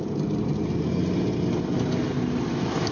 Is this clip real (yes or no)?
yes